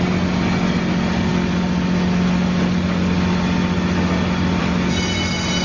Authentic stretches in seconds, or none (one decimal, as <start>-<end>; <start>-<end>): 0.0-5.6